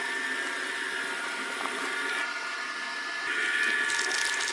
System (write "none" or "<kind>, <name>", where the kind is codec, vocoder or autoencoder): none